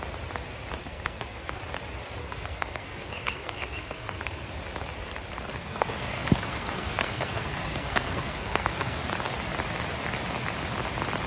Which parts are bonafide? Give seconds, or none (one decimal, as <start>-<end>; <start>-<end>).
0.0-0.8; 1.6-2.2; 4.5-5.5; 9.0-11.3